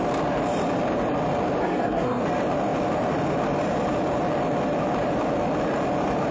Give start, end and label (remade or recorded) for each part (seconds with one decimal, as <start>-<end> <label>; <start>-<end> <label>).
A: 0.0-1.6 recorded; 1.6-2.2 remade; 2.2-6.3 recorded